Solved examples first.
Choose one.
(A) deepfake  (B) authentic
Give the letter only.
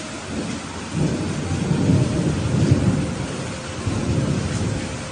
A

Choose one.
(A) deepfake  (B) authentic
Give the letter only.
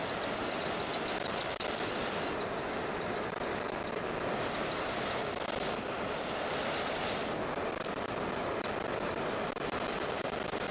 B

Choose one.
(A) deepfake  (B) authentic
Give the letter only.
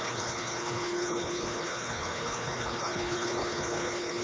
A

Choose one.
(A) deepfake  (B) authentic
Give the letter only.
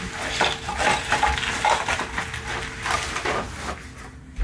B